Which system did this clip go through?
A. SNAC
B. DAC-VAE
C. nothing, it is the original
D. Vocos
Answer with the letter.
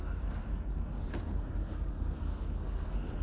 A